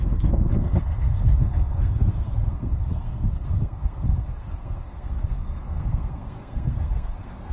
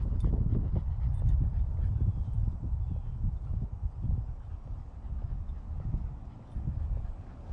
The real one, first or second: second